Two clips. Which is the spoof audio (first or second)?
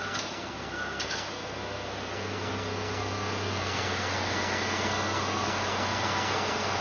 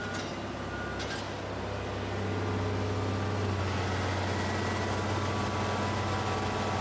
first